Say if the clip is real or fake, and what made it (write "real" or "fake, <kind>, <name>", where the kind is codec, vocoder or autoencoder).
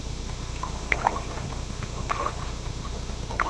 fake, autoencoder, DAC-VAE